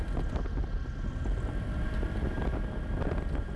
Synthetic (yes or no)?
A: no